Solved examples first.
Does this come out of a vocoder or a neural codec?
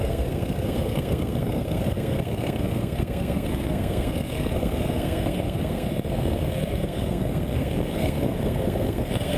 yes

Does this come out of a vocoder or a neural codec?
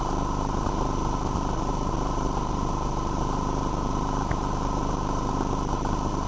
no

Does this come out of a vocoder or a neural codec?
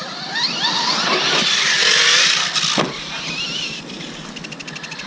no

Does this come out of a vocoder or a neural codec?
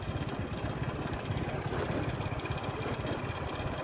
no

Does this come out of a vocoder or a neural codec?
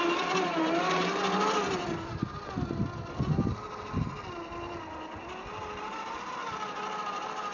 no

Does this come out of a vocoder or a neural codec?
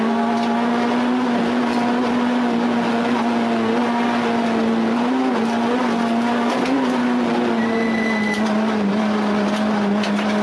no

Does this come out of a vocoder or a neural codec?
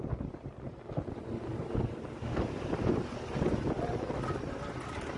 no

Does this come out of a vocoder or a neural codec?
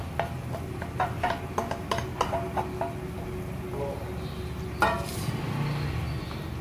no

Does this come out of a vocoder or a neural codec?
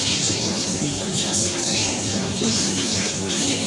yes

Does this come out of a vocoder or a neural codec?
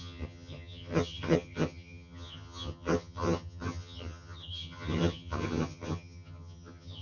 yes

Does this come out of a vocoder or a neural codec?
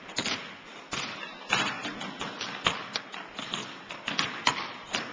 no